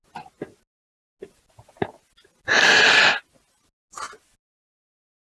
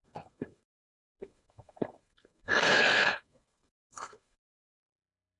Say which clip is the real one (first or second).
first